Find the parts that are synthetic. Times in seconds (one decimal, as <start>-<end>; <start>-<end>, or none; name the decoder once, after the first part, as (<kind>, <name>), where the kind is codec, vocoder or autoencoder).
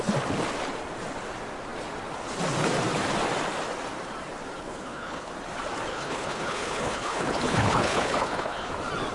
4.6-5.3 (codec, HILCodec); 5.9-8.7